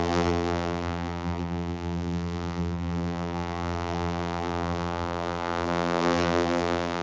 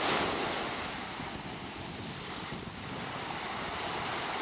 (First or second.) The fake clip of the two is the first